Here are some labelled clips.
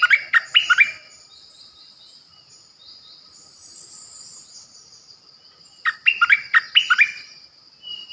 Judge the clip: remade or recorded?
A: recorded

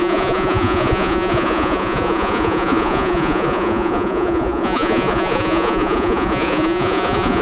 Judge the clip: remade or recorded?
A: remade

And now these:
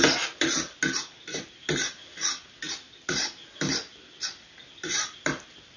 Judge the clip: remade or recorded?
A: recorded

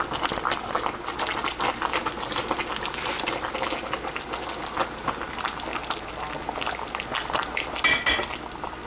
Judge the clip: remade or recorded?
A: recorded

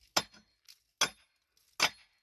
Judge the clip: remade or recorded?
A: recorded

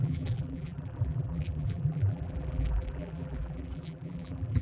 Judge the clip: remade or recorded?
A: remade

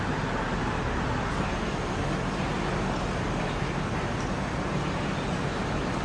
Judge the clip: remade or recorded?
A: recorded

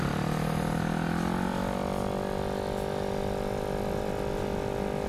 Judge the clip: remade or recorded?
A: recorded